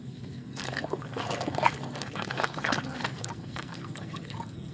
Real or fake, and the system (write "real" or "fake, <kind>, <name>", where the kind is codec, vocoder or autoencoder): fake, codec, SNAC